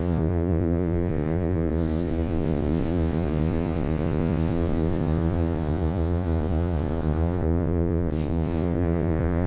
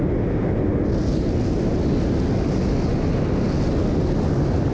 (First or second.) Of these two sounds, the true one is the second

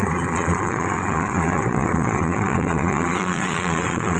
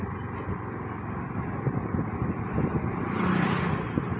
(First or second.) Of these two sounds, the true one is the second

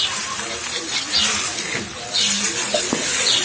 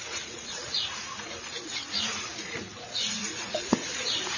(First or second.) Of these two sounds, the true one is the first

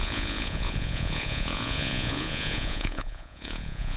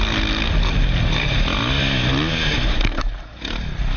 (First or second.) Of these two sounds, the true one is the second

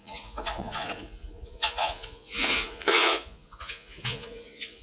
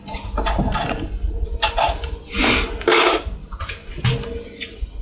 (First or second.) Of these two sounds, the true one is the second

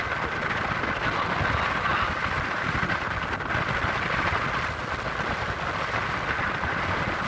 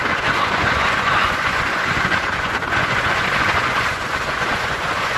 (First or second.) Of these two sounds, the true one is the first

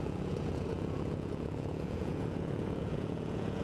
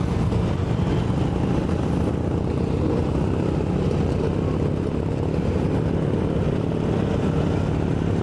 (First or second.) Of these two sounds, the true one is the second